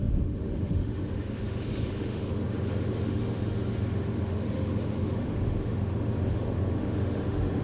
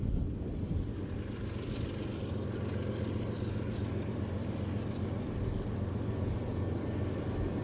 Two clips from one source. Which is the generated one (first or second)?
first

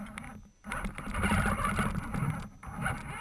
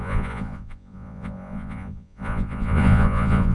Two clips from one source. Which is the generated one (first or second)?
second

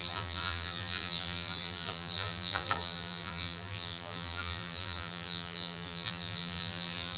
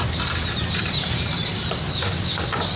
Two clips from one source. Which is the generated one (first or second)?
first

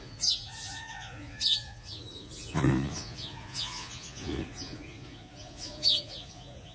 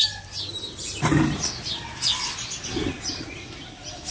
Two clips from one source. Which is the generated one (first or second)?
first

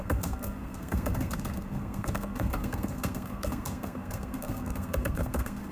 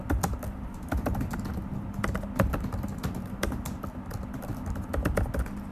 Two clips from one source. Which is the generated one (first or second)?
first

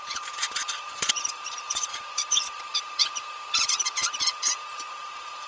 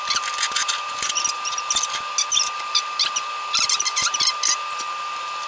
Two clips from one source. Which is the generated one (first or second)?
first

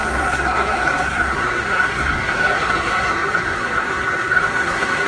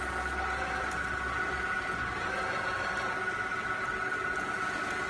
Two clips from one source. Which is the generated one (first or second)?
first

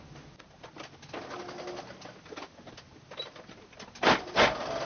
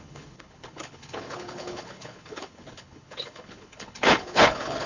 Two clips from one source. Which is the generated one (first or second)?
second